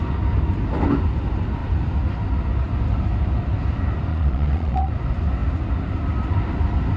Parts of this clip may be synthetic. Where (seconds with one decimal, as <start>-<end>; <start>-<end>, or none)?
4.1-4.9